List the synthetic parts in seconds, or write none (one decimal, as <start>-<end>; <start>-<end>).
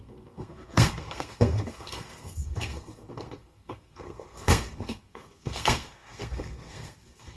0.0-7.4